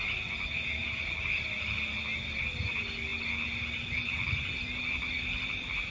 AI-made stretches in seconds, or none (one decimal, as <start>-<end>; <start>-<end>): none